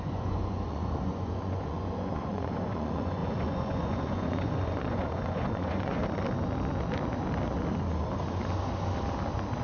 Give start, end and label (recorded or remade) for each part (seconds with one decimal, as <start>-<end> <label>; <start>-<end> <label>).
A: 0.0-6.0 remade; 6.0-9.6 recorded